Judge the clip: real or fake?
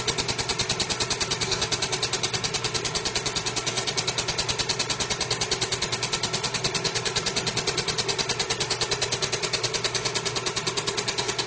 real